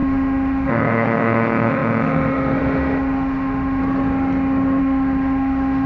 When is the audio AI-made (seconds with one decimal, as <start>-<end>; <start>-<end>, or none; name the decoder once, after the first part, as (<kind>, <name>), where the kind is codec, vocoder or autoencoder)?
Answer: 0.0-3.8 (autoencoder, DAC-VAE); 4.8-5.9